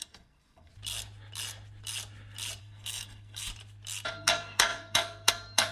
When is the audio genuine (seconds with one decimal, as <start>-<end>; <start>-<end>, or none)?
0.7-2.6; 3.5-4.1